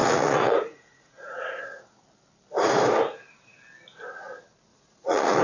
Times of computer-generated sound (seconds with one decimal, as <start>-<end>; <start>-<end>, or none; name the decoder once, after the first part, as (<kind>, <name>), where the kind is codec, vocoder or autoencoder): 0.0-2.0 (vocoder, Vocos); 4.7-5.4